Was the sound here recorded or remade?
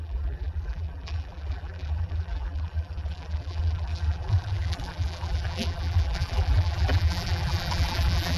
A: remade